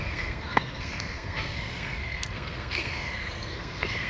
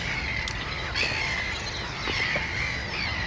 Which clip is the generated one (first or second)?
first